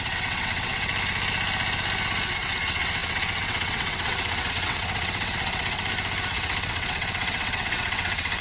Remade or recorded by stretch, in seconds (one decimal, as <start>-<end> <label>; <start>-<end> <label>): 0.0-0.9 remade; 0.9-2.3 recorded; 2.3-5.8 remade; 5.8-6.3 recorded; 6.3-8.4 remade

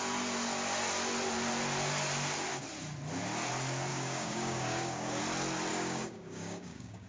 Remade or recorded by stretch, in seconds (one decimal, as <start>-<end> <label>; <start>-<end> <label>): 0.0-3.9 recorded; 3.9-5.2 remade; 5.2-5.7 recorded; 5.7-7.1 remade

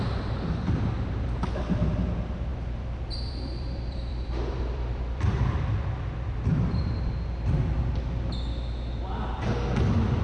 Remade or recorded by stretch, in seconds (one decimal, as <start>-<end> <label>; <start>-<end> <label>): 0.0-2.5 recorded; 2.5-7.6 remade; 7.6-10.2 recorded

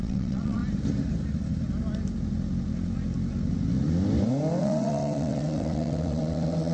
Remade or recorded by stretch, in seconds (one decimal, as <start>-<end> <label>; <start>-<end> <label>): 0.0-0.6 remade; 0.6-4.6 recorded; 4.6-6.7 remade

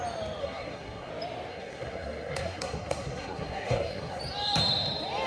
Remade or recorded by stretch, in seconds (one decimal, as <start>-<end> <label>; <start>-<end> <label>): 0.0-0.4 recorded; 0.4-1.1 remade; 1.1-1.5 recorded; 1.5-4.2 remade; 4.2-5.3 recorded

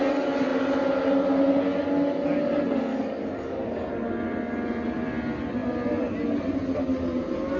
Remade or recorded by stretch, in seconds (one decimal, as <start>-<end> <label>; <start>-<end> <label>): 0.0-2.9 recorded; 2.9-3.9 remade; 3.9-7.6 recorded

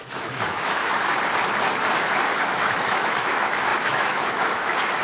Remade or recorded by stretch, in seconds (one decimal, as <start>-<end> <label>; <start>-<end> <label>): 0.0-1.1 remade; 1.1-2.4 recorded; 2.4-5.0 remade